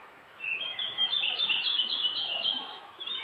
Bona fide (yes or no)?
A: no